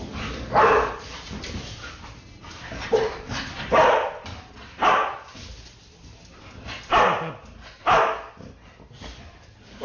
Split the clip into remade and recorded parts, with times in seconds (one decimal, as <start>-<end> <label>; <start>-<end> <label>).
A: 0.0-2.4 recorded; 2.4-3.3 remade; 3.3-9.8 recorded